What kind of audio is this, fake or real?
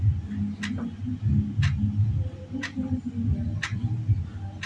real